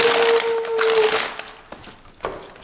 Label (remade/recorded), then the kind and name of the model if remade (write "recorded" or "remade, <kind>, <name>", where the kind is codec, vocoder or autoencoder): recorded